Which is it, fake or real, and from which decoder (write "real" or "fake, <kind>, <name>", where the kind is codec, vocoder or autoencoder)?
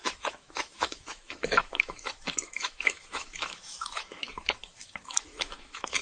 fake, autoencoder, DAC-VAE